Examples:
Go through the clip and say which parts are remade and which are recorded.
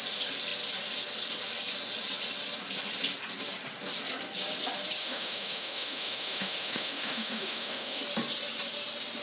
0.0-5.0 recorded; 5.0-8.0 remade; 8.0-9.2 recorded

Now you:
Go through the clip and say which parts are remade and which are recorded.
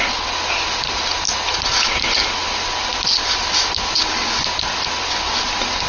0.0-5.9 recorded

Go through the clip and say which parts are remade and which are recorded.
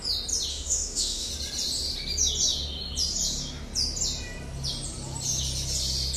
0.0-0.5 recorded; 0.5-1.3 remade; 1.3-6.2 recorded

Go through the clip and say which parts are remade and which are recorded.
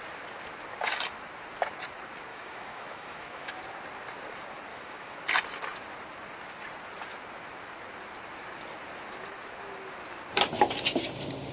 0.0-2.3 recorded; 2.3-3.6 remade; 3.6-4.7 recorded; 4.7-5.2 remade; 5.2-11.5 recorded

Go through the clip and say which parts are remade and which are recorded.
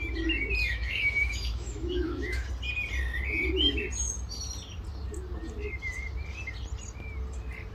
0.0-0.6 recorded; 0.6-2.5 remade; 2.5-7.7 recorded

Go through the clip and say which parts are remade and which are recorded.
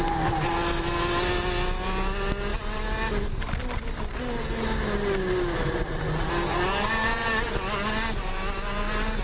0.0-9.2 recorded